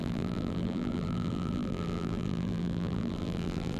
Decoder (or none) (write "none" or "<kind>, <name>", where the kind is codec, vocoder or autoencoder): vocoder, BigVGAN v2